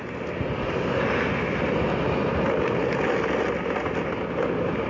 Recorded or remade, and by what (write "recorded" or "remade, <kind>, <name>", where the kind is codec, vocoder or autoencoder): recorded